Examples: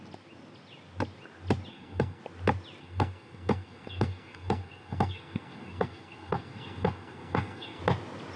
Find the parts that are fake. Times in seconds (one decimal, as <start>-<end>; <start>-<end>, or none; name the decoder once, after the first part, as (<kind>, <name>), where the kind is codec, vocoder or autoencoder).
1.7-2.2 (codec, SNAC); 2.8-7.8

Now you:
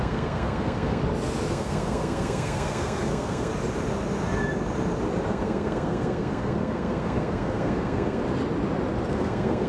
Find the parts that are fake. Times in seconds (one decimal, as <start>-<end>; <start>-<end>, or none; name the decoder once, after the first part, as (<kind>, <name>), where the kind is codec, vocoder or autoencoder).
0.0-1.0 (codec, SNAC); 1.5-3.5; 5.3-8.2; 9.1-9.7

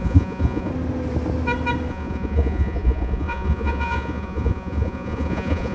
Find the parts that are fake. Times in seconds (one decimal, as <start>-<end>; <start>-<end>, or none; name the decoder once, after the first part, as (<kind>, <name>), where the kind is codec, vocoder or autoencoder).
0.0-0.7 (vocoder, Vocos); 1.9-5.7

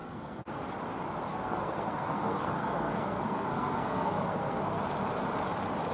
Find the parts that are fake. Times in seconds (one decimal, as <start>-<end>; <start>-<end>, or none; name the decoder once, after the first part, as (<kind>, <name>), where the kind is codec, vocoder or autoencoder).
0.0-0.6 (codec, SNAC); 1.3-4.8